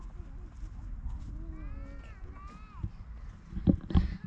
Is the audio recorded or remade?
recorded